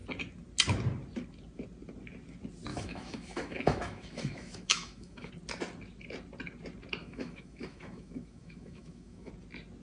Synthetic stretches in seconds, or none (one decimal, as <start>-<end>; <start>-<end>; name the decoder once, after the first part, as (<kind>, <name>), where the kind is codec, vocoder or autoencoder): 2.7-5.3 (autoencoder, DAC-VAE); 7.0-9.3